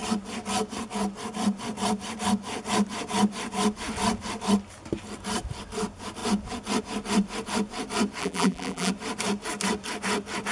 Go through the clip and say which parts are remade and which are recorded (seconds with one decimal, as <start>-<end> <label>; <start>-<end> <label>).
0.0-8.2 recorded; 8.2-8.9 remade; 8.9-10.5 recorded